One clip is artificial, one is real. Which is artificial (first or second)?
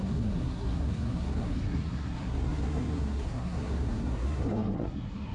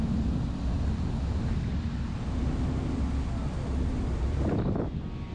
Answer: first